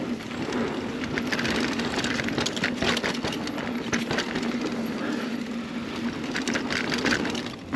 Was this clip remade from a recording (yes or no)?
no